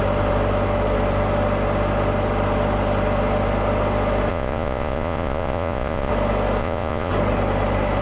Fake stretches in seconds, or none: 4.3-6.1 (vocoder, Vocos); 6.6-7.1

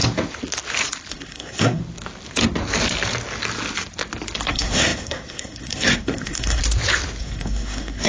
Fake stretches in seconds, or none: 1.1-1.8 (codec, SNAC); 4.5-6.6; 7.2-8.1

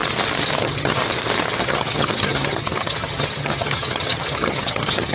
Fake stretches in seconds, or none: 0.6-1.0 (vocoder, HiFi-GAN); 1.6-5.1

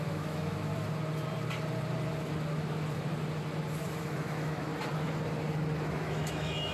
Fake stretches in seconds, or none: 0.0-0.7 (autoencoder, DAC-VAE); 4.0-4.7; 5.9-6.7

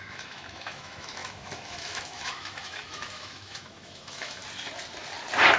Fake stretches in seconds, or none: 0.0-4.4 (autoencoder, DAC-VAE)